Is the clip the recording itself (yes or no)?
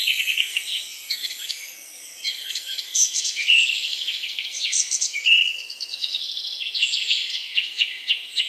no